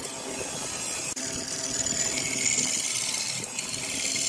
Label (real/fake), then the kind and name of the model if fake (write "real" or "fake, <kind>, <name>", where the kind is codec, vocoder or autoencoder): real